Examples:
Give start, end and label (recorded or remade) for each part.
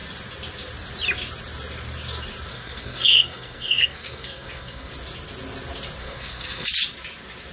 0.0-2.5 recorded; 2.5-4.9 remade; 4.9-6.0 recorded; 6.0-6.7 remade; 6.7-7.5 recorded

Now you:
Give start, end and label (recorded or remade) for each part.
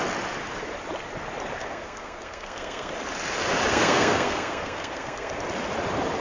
0.0-1.6 recorded; 1.6-2.9 remade; 2.9-3.7 recorded; 3.7-5.3 remade; 5.3-6.2 recorded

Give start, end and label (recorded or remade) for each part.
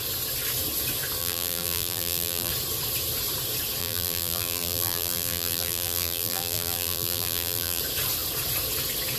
0.0-1.2 recorded; 1.2-2.5 remade; 2.5-3.8 recorded; 3.8-7.8 remade; 7.8-9.2 recorded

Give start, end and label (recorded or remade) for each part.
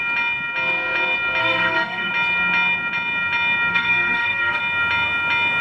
0.0-1.4 recorded; 1.4-2.1 remade; 2.1-3.7 recorded; 3.7-4.6 remade; 4.6-5.6 recorded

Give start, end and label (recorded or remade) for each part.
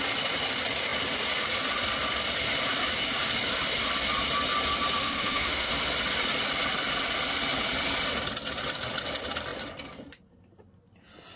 0.0-5.0 recorded; 5.0-5.7 remade; 5.7-11.4 recorded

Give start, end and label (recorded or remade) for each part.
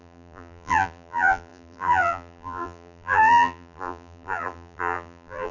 0.0-5.5 remade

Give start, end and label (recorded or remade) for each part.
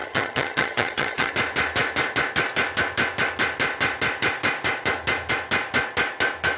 0.0-1.3 remade; 1.3-6.6 recorded